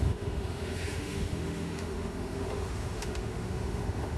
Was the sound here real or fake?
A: fake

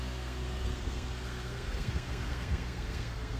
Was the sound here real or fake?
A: fake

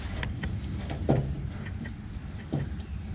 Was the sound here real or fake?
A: fake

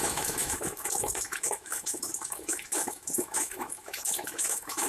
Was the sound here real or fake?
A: fake